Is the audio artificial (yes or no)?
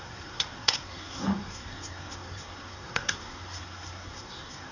yes